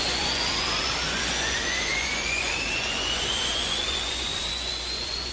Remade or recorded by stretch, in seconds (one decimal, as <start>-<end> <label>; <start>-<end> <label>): 0.0-5.3 remade